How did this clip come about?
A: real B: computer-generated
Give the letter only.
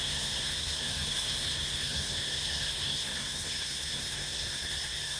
B